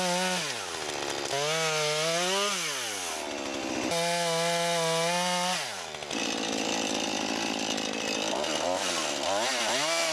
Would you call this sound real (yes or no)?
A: yes